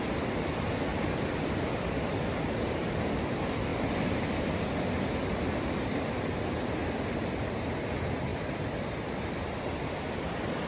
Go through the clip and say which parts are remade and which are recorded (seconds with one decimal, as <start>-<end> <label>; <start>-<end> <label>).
0.0-0.9 recorded; 0.9-1.5 remade; 1.5-6.8 recorded; 6.8-7.4 remade; 7.4-8.3 recorded; 8.3-9.4 remade; 9.4-10.7 recorded